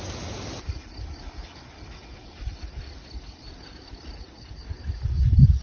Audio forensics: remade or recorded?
recorded